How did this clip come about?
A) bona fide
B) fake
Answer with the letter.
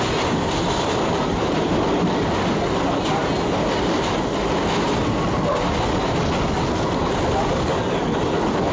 A